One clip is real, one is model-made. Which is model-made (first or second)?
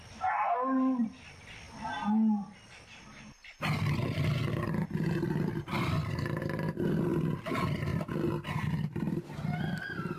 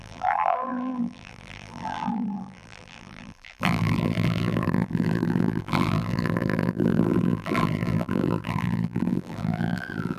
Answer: second